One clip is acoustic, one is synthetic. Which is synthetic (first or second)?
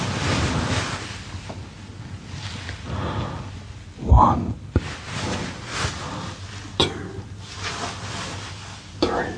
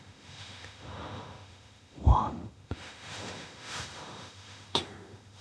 second